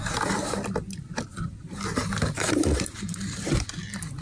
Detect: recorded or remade recorded